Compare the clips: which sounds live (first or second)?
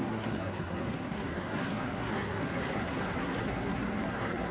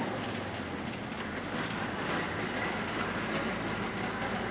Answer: second